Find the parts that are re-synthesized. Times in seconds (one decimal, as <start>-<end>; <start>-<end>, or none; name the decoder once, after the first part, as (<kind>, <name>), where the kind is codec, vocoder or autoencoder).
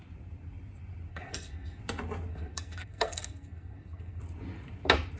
1.1-1.8 (codec, SNAC); 2.3-4.2